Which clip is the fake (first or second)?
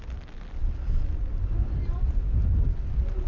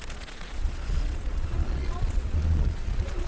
second